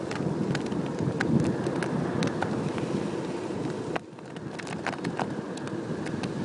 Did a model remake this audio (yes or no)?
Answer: no